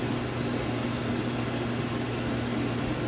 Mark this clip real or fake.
real